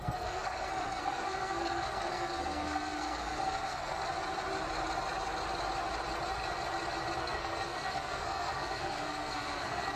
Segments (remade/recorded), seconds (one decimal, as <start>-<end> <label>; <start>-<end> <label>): 0.0-4.0 remade; 4.0-7.2 recorded; 7.2-10.0 remade